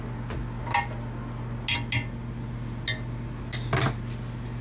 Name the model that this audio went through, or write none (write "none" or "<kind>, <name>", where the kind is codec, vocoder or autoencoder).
none